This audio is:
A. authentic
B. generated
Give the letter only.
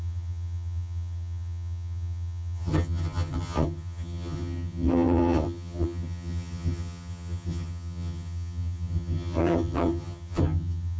B